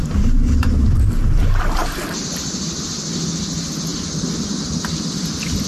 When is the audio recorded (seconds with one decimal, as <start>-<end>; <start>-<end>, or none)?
0.0-5.7